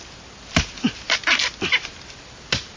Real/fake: real